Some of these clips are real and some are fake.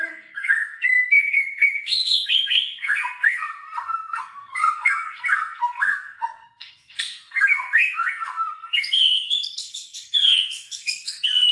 fake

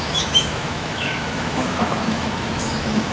fake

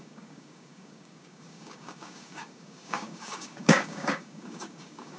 fake